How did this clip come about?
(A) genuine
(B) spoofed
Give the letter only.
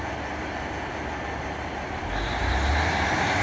A